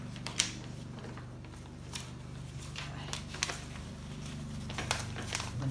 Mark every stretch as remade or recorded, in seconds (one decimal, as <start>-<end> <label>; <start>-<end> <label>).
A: 0.0-1.0 remade; 1.0-3.5 recorded; 3.5-5.7 remade